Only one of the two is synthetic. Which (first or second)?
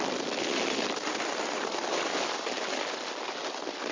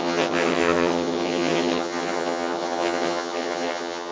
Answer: second